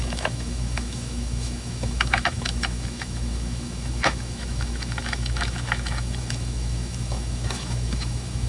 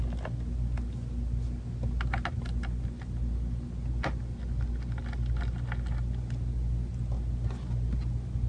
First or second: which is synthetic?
first